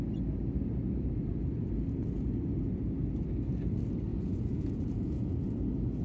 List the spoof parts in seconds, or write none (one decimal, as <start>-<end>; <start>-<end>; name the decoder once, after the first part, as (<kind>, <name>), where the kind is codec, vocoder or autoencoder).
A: 4.1-5.4 (vocoder, Vocos)